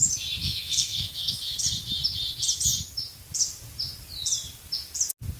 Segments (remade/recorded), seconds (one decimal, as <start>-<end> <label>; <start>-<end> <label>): 0.0-0.4 recorded; 0.4-1.6 remade; 1.6-5.4 recorded